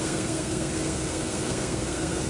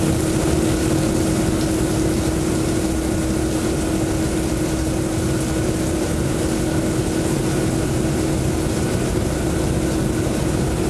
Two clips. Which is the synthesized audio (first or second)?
first